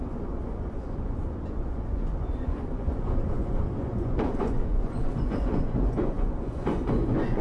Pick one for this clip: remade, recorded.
remade